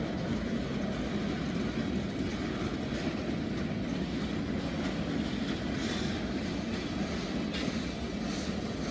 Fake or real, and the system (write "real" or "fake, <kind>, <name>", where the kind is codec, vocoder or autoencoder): real